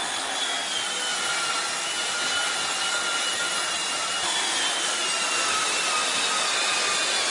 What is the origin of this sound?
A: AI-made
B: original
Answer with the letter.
B